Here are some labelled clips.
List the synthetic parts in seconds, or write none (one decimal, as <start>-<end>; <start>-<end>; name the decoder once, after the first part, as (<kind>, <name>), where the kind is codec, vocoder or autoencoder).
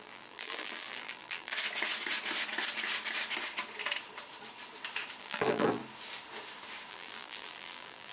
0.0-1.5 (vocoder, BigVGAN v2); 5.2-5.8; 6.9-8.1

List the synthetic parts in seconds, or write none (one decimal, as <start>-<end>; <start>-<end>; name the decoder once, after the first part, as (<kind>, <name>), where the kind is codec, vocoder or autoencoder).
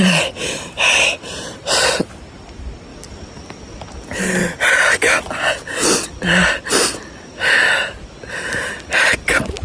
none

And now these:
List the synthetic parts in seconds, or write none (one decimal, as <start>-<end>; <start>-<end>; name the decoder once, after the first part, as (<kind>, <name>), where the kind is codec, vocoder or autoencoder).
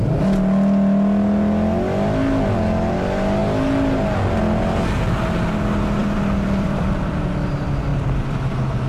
6.0-7.2 (vocoder, BigVGAN v2); 7.9-8.4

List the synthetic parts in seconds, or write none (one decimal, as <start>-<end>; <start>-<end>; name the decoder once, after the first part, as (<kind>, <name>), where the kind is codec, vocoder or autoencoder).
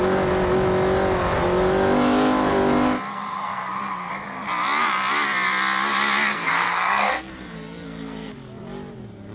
3.1-4.1 (codec, SNAC); 6.3-8.3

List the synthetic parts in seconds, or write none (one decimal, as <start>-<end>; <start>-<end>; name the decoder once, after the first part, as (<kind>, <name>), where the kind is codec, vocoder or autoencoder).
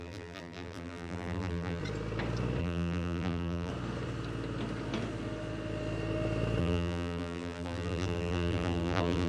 0.0-1.8 (vocoder, BigVGAN v2); 2.6-3.7; 6.6-9.3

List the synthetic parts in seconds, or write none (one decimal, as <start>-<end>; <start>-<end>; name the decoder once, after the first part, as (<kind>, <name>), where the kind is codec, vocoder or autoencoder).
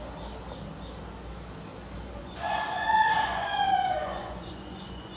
2.2-5.2 (vocoder, Vocos)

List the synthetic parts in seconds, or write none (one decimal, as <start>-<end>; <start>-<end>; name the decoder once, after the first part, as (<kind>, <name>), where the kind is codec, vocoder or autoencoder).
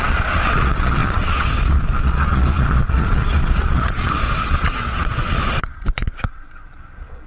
0.0-7.3 (vocoder, Vocos)